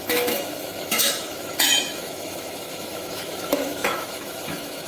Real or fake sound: fake